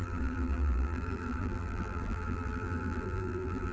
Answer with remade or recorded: remade